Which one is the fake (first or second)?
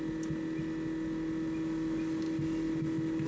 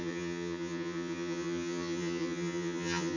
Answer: second